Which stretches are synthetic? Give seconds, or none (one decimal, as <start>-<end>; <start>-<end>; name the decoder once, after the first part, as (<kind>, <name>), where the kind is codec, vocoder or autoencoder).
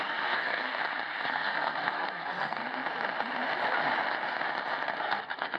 0.0-0.8 (codec, SNAC); 1.3-2.6; 5.0-5.6